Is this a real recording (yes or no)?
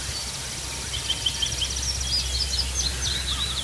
yes